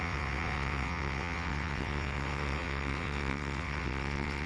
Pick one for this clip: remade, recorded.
remade